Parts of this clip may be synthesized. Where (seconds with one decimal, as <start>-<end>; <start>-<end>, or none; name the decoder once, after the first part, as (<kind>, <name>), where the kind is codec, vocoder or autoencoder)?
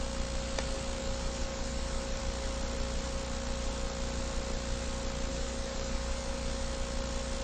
1.0-2.2 (codec, DAC); 5.3-6.6